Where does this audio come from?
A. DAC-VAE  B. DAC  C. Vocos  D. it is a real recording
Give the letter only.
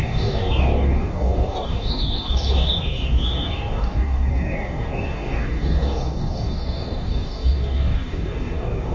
B